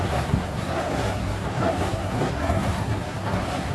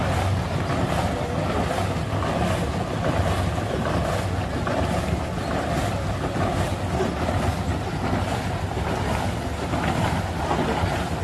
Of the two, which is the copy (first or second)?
first